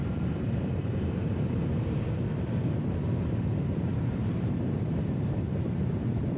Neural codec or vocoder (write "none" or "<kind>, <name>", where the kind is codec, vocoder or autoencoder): vocoder, BigVGAN v2